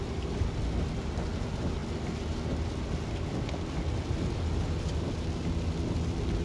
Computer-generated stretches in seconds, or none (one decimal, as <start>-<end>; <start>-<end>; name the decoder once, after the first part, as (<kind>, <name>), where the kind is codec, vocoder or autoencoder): none